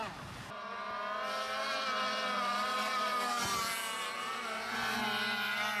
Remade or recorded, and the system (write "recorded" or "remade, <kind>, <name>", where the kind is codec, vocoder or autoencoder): recorded